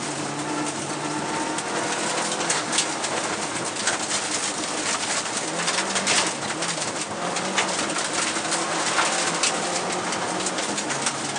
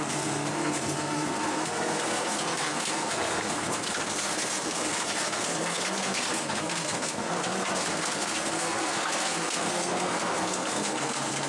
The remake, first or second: second